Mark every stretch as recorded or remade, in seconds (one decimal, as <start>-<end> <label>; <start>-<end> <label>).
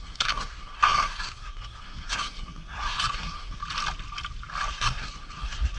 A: 0.0-3.6 remade; 3.6-4.7 recorded; 4.7-5.8 remade